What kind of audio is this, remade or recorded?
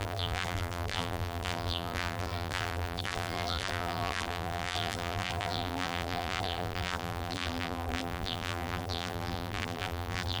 remade